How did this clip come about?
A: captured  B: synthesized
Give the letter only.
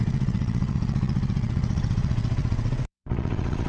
B